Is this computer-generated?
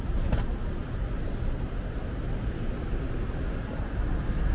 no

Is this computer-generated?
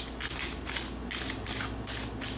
no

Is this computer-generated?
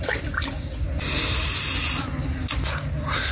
no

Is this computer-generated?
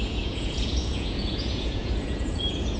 yes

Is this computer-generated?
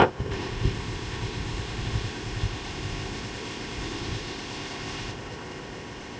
yes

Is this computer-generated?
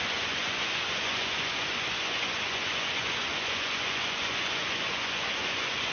yes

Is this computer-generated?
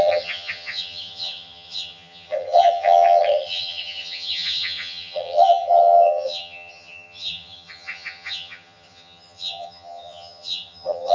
yes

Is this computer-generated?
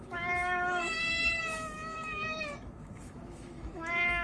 yes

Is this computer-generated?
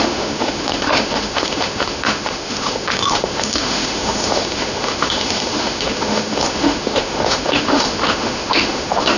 yes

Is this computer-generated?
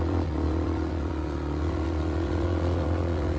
yes